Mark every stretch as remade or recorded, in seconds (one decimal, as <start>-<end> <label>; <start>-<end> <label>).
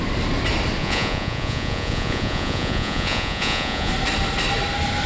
0.0-0.8 recorded; 0.8-3.9 remade; 3.9-5.1 recorded